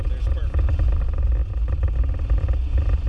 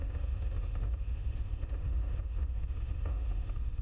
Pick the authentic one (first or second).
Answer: first